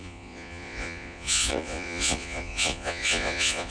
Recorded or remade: remade